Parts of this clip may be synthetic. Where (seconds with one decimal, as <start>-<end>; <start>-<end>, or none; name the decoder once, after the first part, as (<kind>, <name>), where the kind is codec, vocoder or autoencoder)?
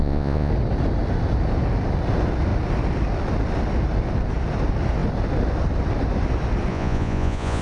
0.0-0.5 (vocoder, Vocos); 6.7-7.6